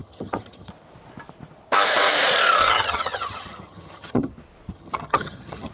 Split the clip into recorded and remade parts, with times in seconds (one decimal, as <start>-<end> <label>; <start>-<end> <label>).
0.0-0.7 remade; 0.7-2.6 recorded; 2.6-4.3 remade; 4.3-4.7 recorded; 4.7-5.7 remade

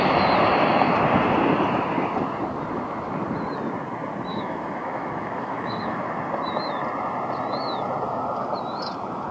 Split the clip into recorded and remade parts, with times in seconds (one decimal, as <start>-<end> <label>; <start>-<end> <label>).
0.0-4.3 recorded; 4.3-6.1 remade; 6.1-9.3 recorded

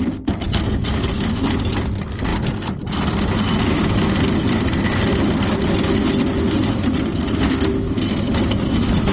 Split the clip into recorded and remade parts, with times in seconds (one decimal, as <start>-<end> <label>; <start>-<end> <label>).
0.0-9.1 recorded